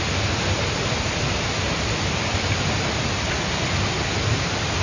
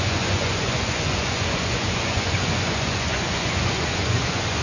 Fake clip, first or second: second